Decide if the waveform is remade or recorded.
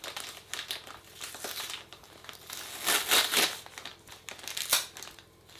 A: recorded